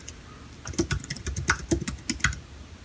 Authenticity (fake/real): real